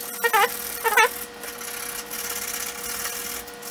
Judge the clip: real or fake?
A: real